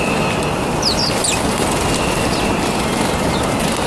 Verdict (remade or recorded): recorded